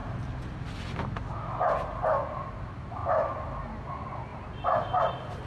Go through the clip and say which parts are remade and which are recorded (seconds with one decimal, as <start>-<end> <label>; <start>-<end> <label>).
0.0-4.3 recorded; 4.3-5.1 remade; 5.1-5.5 recorded